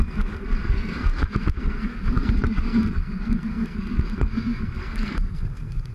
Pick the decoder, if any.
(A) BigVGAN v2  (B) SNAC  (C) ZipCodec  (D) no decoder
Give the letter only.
B